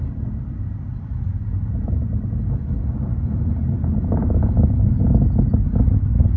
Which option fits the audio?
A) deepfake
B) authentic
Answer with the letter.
B